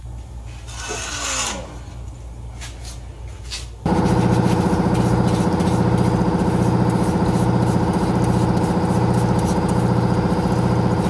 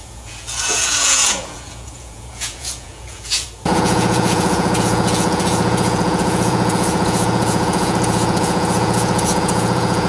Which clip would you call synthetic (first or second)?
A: second